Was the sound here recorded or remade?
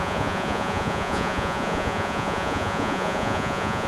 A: remade